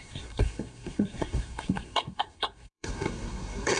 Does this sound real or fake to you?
fake